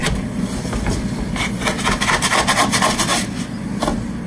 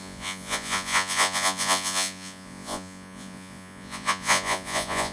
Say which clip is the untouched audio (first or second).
first